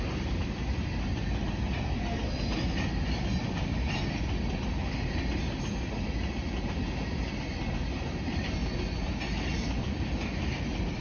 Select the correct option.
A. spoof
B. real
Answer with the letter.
B